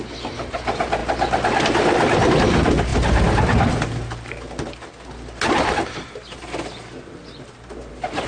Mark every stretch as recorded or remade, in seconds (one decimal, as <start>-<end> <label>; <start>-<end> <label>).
0.0-8.3 recorded